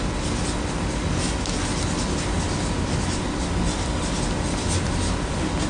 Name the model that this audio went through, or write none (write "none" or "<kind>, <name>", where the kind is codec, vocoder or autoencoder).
none